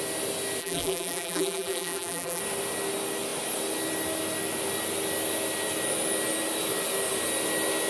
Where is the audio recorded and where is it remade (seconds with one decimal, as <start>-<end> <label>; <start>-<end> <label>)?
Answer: 0.0-0.6 recorded; 0.6-2.4 remade; 2.4-7.9 recorded